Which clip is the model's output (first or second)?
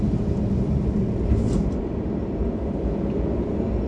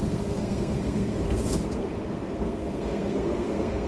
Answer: second